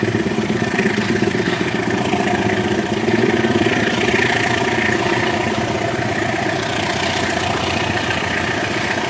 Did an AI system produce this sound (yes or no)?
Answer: yes